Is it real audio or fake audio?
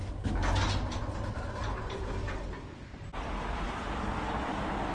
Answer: real